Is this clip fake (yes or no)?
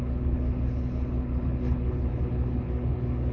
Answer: yes